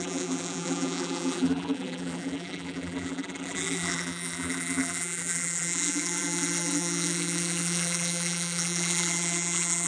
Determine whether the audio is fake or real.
fake